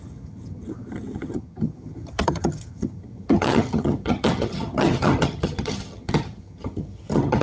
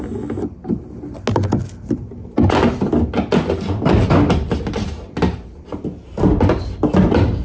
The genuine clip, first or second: second